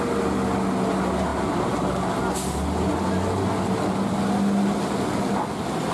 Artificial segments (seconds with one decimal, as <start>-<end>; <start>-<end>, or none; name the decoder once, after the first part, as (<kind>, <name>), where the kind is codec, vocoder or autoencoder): none